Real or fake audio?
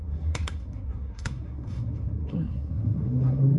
fake